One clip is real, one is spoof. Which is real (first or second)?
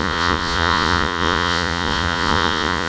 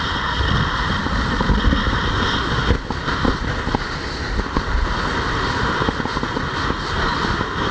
second